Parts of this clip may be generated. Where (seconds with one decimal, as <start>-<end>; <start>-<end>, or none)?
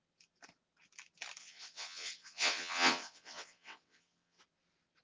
1.4-4.4